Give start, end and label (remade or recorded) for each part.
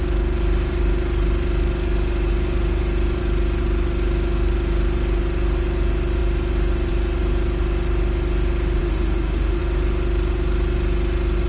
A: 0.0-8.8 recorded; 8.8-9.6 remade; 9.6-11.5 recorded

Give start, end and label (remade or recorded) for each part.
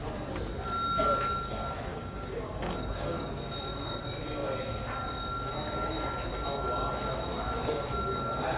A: 0.0-1.9 recorded; 1.9-3.3 remade; 3.3-8.6 recorded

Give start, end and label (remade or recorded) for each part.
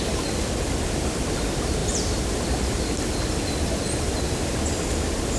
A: 0.0-5.4 recorded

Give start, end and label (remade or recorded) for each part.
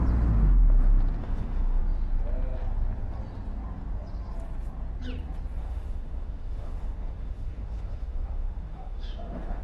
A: 0.0-1.2 recorded; 1.2-1.8 remade; 1.8-5.6 recorded; 5.6-9.6 remade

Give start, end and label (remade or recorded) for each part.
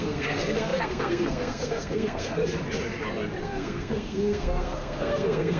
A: 0.0-2.4 remade; 2.4-3.4 recorded; 3.4-5.6 remade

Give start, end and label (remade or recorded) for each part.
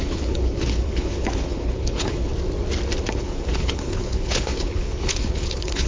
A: 0.0-2.3 remade; 2.3-3.1 recorded; 3.1-5.9 remade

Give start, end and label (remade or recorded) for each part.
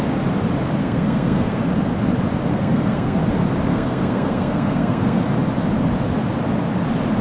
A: 0.0-0.8 recorded; 0.8-1.6 remade; 1.6-2.5 recorded; 2.5-3.2 remade; 3.2-3.7 recorded; 3.7-5.2 remade; 5.2-7.2 recorded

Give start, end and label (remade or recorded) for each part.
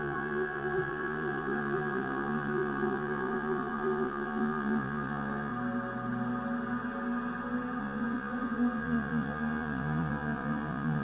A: 0.0-5.5 remade; 5.5-7.8 recorded; 7.8-11.0 remade